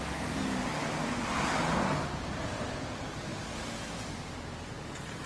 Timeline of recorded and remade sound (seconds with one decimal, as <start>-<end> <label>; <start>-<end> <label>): 0.0-5.3 recorded